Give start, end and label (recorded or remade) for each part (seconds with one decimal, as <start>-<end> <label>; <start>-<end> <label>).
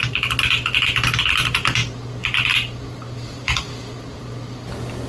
0.0-5.1 recorded